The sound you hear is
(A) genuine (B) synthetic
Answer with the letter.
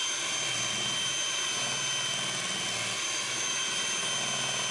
A